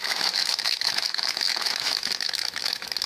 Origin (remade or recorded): remade